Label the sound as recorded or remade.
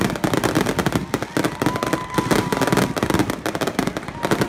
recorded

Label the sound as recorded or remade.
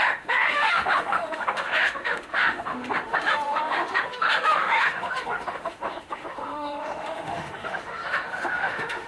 remade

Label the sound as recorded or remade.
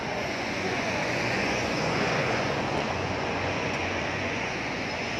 remade